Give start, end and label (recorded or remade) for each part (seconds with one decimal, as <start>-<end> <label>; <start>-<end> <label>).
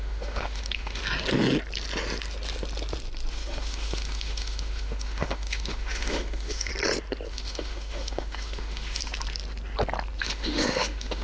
0.0-1.0 remade; 1.0-3.3 recorded; 3.3-6.7 remade; 6.7-7.3 recorded; 7.3-9.0 remade; 9.0-10.2 recorded; 10.2-11.2 remade